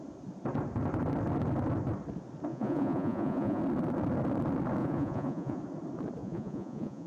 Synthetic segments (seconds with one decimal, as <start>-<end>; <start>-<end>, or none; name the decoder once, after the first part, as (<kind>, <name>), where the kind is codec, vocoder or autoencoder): 2.5-3.6 (vocoder, Vocos); 4.8-5.6; 6.2-7.1